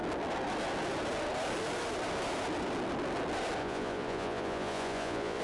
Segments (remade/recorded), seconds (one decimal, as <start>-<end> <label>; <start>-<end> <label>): 0.0-3.6 recorded; 3.6-5.4 remade